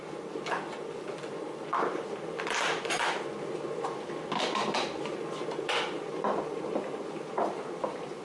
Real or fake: real